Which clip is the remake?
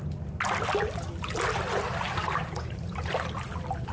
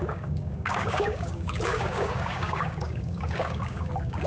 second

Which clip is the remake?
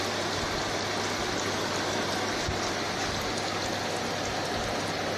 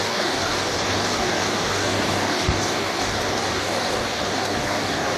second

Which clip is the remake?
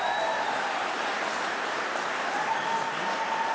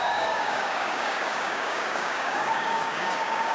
second